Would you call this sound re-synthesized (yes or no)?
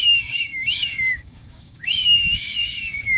yes